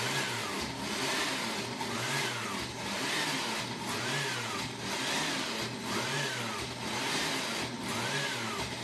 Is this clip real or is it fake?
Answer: real